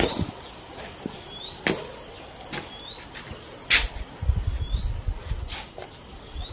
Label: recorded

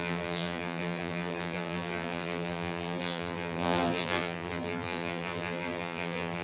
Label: remade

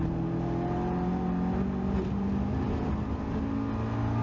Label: recorded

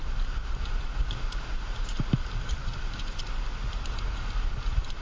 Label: recorded